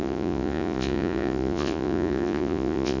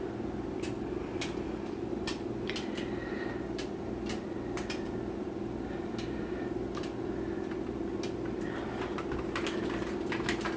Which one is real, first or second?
second